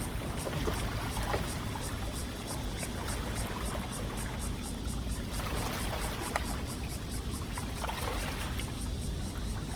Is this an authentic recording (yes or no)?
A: yes